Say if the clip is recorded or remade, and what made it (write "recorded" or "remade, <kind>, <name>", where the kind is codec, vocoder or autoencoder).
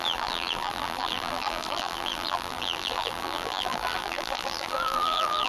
remade, vocoder, BigVGAN v2